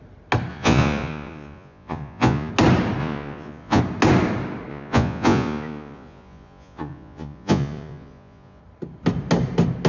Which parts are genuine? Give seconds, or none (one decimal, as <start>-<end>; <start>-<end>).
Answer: 0.0-0.5; 2.5-3.0; 3.8-4.7; 8.6-9.9